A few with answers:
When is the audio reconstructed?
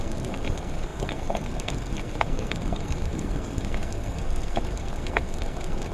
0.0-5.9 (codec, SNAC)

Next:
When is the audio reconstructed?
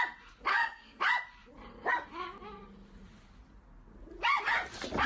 0.5-1.0 (codec, SNAC)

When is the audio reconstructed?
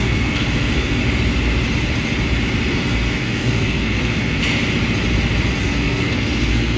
0.0-1.0 (codec, SNAC); 2.7-4.4; 5.6-6.8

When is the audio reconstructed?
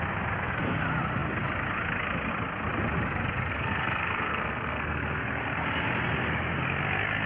3.5-5.6 (codec, SNAC)